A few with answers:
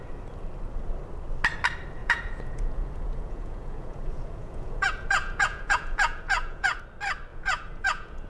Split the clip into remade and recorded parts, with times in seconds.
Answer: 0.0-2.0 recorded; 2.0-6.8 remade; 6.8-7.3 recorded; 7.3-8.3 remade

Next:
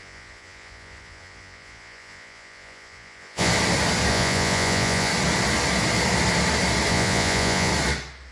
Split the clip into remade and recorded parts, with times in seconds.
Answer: 0.0-3.5 remade; 3.5-4.1 recorded; 4.1-5.1 remade; 5.1-6.9 recorded; 6.9-7.7 remade; 7.7-8.3 recorded

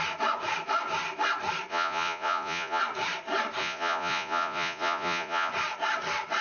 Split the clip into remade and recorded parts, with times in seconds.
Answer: 0.0-1.7 recorded; 1.7-2.8 remade; 2.8-3.6 recorded; 3.6-5.5 remade; 5.5-6.4 recorded